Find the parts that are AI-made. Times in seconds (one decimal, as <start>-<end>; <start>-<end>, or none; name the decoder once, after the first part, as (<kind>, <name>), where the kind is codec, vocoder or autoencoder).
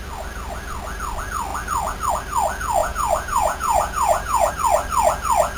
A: 2.8-4.5 (vocoder, Vocos)